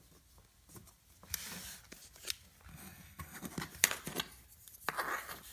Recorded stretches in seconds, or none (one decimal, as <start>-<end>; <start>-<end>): 0.0-2.7; 3.5-5.5